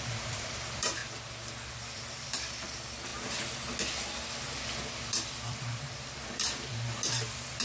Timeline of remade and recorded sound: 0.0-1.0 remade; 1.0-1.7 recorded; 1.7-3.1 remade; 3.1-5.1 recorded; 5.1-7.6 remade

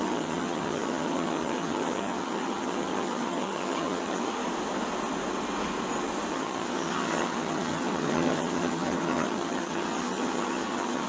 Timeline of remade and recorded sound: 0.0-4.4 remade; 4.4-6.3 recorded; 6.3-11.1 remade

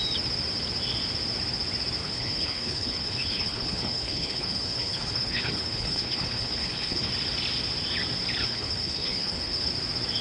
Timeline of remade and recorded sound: 0.0-2.0 recorded; 2.0-7.1 remade; 7.1-8.4 recorded; 8.4-9.7 remade; 9.7-10.2 recorded

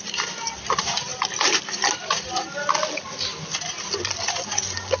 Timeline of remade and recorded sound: 0.0-5.0 recorded

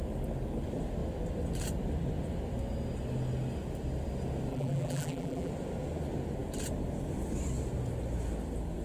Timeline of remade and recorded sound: 0.0-4.5 recorded; 4.5-5.5 remade; 5.5-8.8 recorded

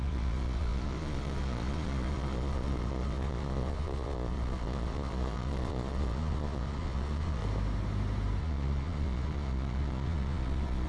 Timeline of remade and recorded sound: 0.0-7.4 remade; 7.4-8.4 recorded; 8.4-10.9 remade

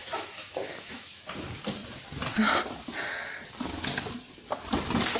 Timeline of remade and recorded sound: 0.0-1.2 remade; 1.2-5.2 recorded

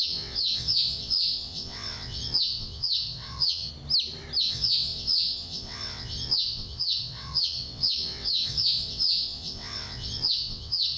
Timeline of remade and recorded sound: 0.0-3.7 remade; 3.7-4.4 recorded; 4.4-11.0 remade